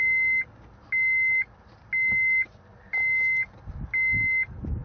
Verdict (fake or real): real